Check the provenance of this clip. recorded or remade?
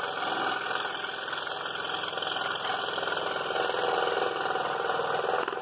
recorded